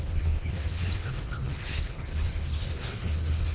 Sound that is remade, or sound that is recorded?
remade